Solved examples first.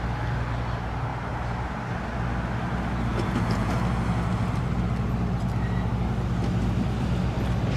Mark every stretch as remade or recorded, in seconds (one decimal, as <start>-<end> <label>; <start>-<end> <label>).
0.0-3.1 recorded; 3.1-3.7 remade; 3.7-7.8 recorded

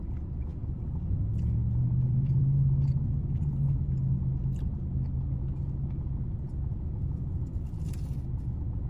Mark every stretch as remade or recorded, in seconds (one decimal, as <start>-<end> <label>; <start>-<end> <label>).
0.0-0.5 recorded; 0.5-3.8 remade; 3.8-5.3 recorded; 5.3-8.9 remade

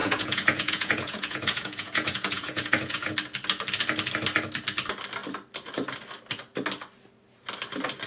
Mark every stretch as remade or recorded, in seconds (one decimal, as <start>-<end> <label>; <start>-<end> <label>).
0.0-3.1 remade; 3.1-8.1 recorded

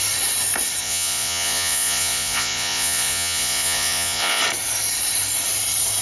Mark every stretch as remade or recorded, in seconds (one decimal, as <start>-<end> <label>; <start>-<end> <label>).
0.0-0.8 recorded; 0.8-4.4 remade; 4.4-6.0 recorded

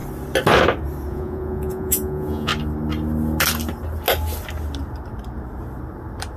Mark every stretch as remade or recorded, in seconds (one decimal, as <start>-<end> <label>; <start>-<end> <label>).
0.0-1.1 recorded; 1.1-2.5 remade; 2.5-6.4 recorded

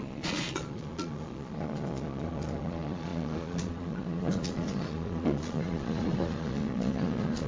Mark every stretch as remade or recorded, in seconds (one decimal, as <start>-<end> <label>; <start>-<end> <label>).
0.0-7.5 remade